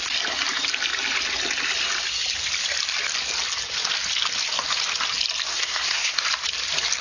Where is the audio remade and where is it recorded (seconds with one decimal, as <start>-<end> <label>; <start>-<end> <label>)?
0.0-5.5 recorded; 5.5-6.2 remade; 6.2-7.0 recorded